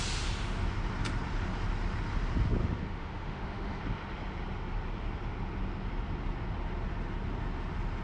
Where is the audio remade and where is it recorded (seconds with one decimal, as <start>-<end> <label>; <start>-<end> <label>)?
0.0-2.6 recorded; 2.6-3.8 remade; 3.8-8.0 recorded